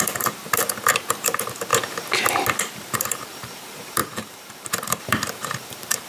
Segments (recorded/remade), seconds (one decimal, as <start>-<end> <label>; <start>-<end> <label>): 0.0-1.7 remade; 1.7-2.6 recorded; 2.6-6.1 remade